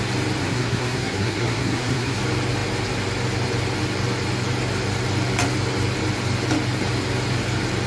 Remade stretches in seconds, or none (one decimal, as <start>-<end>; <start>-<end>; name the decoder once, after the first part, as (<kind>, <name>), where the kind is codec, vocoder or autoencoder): 0.4-2.2 (codec, SNAC)